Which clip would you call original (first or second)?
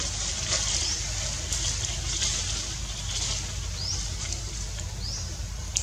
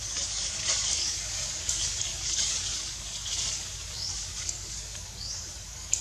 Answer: first